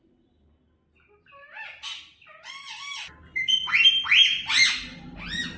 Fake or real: real